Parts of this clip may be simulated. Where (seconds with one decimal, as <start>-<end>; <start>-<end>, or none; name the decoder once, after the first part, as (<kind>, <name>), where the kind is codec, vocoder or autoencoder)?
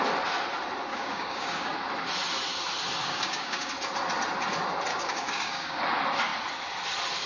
0.9-1.8 (codec, DAC); 3.0-3.7; 4.9-5.8